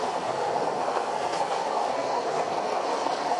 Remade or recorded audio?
remade